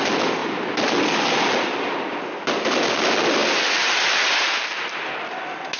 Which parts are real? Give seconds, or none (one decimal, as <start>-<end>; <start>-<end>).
0.0-5.8